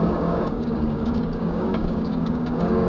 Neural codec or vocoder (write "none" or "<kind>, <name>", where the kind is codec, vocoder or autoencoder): codec, DAC